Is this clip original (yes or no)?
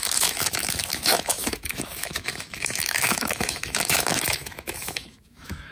no